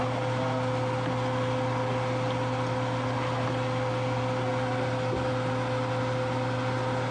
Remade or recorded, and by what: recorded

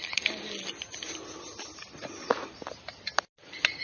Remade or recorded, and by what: recorded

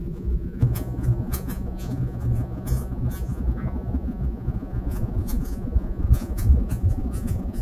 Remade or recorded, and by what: remade, vocoder, Vocos